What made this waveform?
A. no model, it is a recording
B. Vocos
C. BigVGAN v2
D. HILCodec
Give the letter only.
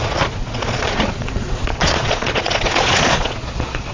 B